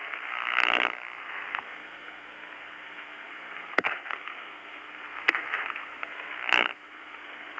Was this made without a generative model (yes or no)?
no